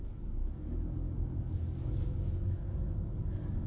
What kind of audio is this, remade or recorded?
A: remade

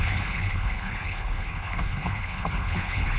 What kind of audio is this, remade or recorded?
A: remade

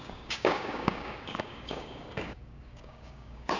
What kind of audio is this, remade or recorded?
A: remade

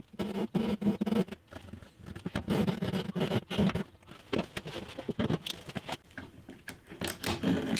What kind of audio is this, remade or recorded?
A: recorded